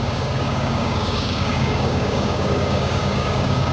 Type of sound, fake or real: fake